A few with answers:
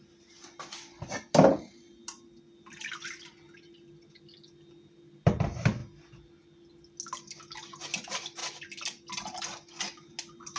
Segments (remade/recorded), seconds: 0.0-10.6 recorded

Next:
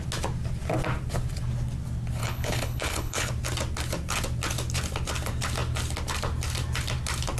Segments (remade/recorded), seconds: 0.0-2.2 recorded; 2.2-3.3 remade; 3.3-7.4 recorded